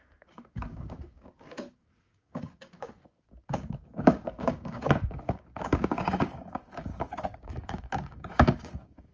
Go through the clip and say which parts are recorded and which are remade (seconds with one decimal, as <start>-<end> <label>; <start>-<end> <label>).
0.0-9.1 remade